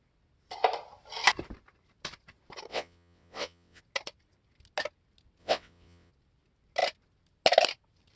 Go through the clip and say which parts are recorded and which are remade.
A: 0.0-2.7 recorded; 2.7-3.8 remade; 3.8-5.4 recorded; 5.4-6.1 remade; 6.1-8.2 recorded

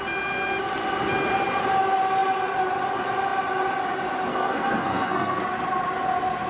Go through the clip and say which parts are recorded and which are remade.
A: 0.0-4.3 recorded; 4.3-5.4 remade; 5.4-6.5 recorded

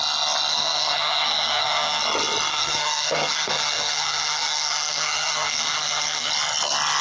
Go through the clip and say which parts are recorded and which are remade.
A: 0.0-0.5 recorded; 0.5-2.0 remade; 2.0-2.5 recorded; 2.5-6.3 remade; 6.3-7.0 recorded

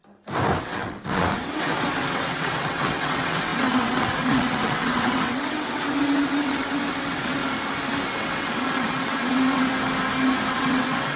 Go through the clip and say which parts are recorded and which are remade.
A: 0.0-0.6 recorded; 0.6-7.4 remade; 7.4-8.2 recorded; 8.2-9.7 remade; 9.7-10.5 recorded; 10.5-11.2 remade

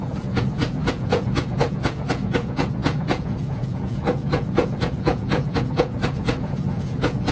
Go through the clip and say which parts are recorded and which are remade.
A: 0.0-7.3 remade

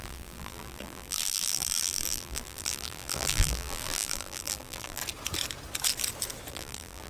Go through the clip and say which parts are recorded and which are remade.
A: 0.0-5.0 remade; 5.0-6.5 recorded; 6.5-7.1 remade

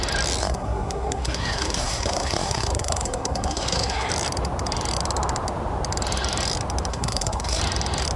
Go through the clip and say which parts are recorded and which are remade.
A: 0.0-0.4 recorded; 0.4-4.1 remade; 4.1-6.9 recorded; 6.9-7.6 remade; 7.6-8.2 recorded

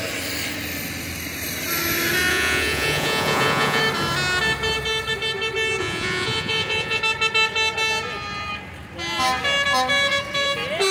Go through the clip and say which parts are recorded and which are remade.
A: 0.0-2.3 recorded; 2.3-3.8 remade; 3.8-5.8 recorded; 5.8-7.0 remade; 7.0-10.9 recorded